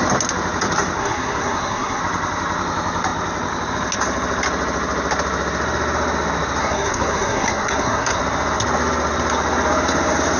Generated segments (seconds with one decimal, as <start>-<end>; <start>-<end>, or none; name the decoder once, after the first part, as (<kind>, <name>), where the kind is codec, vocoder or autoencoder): 1.0-2.0 (codec, SNAC); 6.6-8.2